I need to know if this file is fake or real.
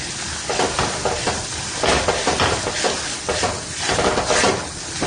real